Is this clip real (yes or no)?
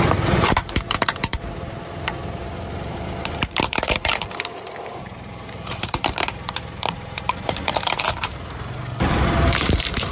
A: no